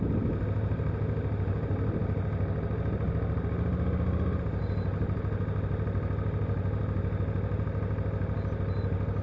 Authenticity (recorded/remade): recorded